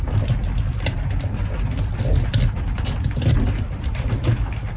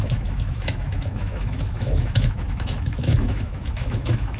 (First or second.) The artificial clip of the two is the second